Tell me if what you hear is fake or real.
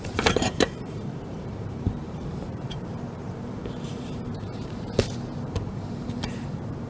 fake